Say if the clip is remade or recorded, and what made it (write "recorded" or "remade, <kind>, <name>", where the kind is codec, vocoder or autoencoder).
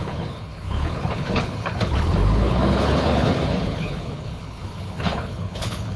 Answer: remade, codec, HILCodec